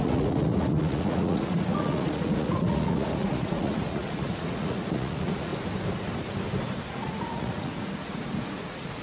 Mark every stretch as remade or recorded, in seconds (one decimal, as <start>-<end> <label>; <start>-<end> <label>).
0.0-5.5 remade; 5.5-6.9 recorded; 6.9-9.0 remade